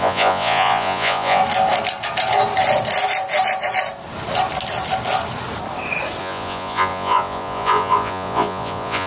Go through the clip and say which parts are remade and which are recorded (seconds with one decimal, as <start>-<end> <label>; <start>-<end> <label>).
0.0-1.4 remade; 1.4-6.2 recorded; 6.2-9.1 remade